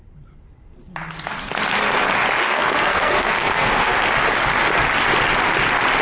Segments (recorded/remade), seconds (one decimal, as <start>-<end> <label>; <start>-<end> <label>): 0.0-2.4 recorded; 2.4-4.0 remade; 4.0-6.0 recorded